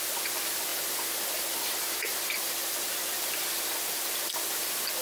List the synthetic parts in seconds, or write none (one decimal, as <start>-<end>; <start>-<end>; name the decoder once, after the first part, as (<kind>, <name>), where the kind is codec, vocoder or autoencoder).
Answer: 0.7-3.7 (vocoder, BigVGAN v2)

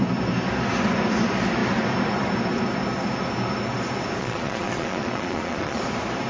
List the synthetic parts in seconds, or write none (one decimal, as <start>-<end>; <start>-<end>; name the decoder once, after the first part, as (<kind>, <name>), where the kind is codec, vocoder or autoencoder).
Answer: 4.2-5.8 (vocoder, Vocos)

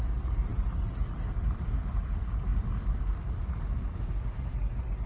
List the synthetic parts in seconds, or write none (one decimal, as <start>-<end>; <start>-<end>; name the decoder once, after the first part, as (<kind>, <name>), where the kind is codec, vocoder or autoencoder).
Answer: none

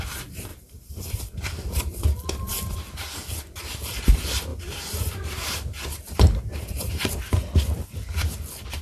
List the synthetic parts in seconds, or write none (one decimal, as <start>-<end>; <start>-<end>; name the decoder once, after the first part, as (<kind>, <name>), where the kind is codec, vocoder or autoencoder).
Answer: 0.5-2.0 (vocoder, BigVGAN v2); 4.5-7.2

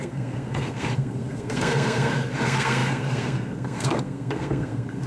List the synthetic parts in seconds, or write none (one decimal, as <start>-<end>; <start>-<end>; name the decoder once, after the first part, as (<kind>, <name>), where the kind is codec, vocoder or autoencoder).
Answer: 0.0-5.1 (codec, SNAC)

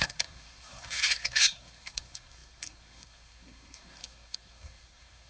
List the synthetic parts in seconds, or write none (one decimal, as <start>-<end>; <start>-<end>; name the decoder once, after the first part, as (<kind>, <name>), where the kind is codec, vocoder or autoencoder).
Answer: 0.0-5.3 (codec, SNAC)

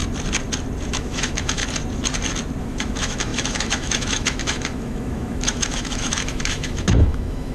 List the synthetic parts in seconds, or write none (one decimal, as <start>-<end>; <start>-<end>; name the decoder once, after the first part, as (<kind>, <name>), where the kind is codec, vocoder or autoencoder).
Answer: 0.9-1.6 (autoencoder, DAC-VAE); 2.6-7.5

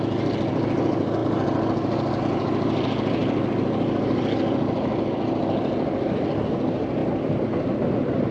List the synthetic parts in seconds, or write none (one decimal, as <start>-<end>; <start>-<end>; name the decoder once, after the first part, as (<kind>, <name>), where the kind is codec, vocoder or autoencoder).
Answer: none